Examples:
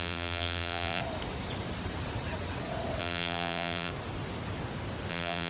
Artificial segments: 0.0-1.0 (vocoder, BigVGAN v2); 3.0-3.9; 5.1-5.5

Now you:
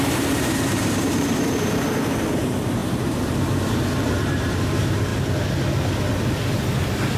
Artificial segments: 0.0-5.1 (vocoder, BigVGAN v2); 6.3-7.2

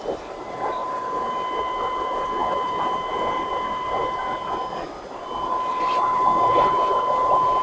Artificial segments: 0.0-0.8 (vocoder, BigVGAN v2); 1.6-4.0; 5.8-7.6